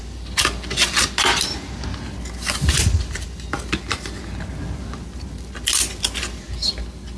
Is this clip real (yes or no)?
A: yes